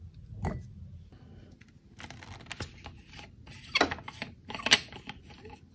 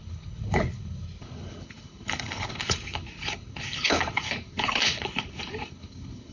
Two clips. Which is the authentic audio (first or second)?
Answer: first